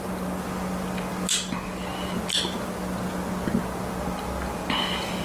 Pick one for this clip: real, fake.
real